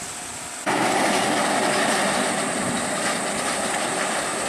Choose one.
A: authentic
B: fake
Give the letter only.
A